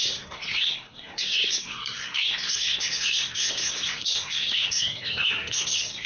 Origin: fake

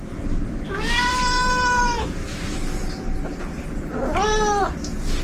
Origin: real